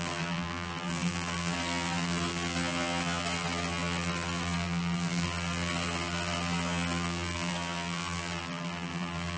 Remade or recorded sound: remade